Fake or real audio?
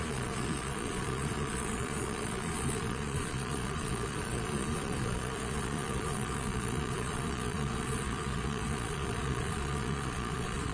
fake